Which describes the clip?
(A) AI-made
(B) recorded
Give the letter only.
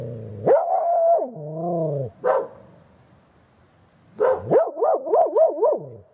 B